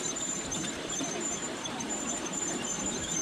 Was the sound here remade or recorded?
remade